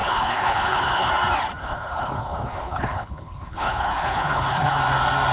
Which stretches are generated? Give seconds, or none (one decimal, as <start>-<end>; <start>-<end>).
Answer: 0.0-1.1; 1.6-4.8